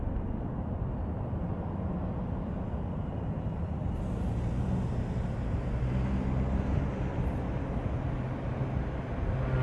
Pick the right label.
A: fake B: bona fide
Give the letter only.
B